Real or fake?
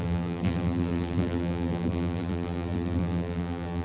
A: fake